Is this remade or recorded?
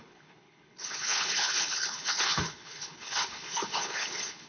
remade